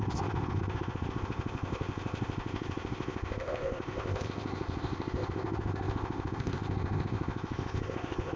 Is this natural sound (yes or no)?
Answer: no